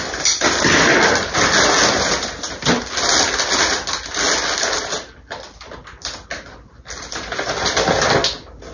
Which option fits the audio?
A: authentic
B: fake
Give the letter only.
A